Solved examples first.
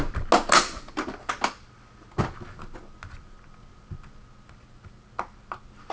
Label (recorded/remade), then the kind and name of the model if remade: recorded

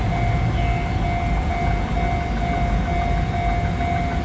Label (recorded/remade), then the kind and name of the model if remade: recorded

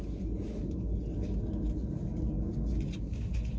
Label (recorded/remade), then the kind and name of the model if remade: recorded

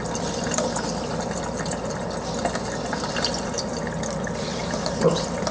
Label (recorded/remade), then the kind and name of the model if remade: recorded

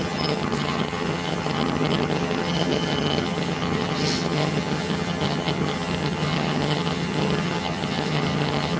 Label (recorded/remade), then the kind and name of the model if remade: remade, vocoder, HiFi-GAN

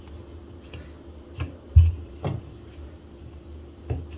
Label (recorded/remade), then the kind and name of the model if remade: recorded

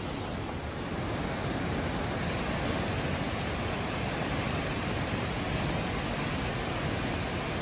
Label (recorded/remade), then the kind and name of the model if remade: recorded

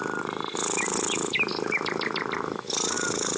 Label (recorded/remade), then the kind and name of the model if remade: recorded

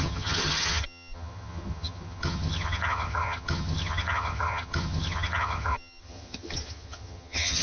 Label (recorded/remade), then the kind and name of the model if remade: remade, vocoder, HiFi-GAN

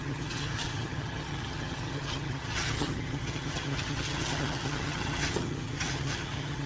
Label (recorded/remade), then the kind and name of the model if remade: remade, vocoder, HiFi-GAN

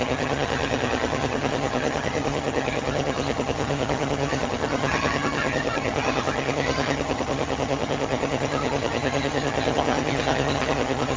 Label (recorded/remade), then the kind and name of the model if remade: remade, vocoder, HiFi-GAN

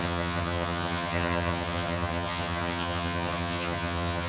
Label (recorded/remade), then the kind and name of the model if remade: remade, vocoder, HiFi-GAN